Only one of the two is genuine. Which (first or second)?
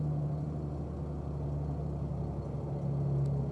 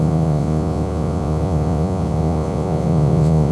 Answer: first